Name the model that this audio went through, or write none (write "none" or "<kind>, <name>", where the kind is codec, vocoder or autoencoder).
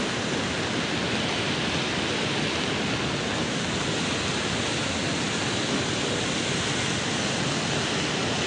none